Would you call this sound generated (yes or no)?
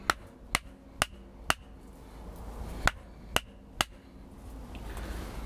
no